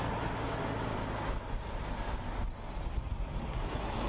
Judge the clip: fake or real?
real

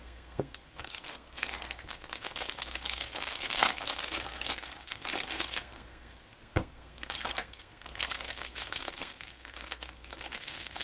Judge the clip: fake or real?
fake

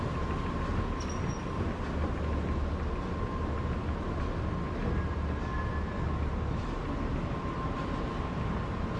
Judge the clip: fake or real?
real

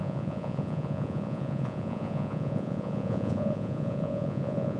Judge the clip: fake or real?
fake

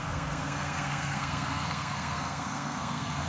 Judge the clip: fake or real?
fake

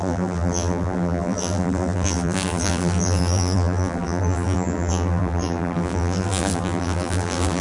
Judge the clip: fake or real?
fake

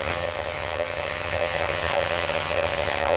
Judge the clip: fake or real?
fake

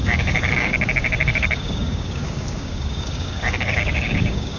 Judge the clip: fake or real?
fake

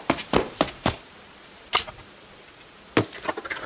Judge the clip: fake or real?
real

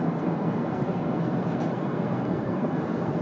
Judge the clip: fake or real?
fake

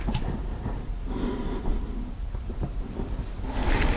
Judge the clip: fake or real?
real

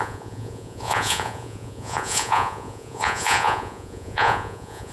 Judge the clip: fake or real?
fake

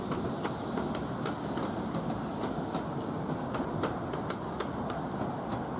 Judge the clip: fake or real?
real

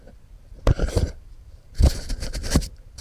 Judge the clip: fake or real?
fake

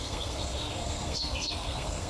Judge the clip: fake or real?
fake